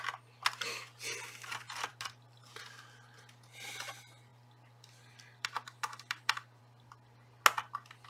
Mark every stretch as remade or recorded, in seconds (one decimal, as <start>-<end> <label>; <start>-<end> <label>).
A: 0.0-4.3 recorded; 4.3-6.6 remade; 6.6-8.1 recorded